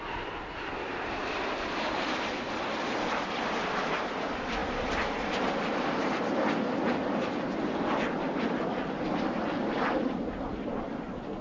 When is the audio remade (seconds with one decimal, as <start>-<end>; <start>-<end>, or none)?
none